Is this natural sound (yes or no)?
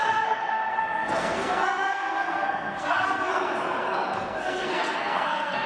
no